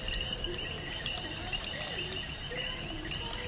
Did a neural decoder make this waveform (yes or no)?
yes